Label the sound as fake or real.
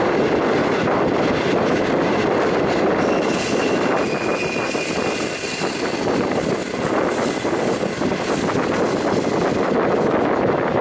real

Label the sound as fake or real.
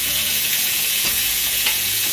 fake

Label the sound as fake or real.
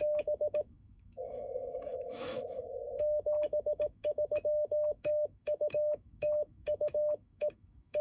fake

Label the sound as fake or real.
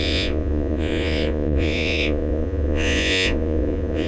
fake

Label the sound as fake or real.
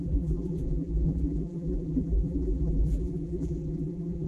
fake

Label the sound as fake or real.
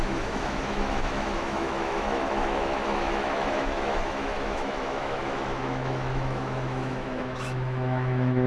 fake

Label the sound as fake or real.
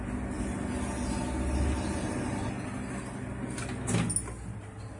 real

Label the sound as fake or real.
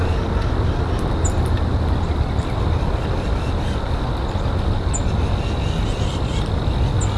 real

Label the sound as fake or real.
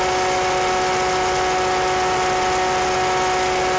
real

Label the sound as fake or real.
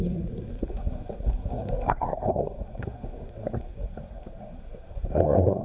fake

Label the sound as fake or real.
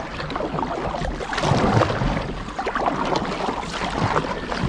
real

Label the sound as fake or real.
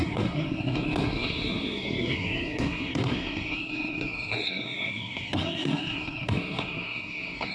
fake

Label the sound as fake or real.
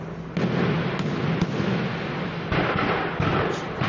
real